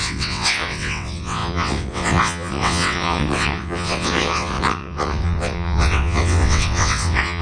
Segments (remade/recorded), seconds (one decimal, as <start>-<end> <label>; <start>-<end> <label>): 0.0-7.4 remade